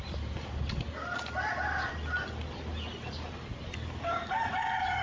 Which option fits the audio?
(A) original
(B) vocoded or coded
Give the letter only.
A